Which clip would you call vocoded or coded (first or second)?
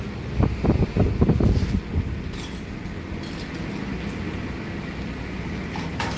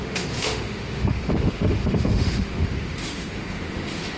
second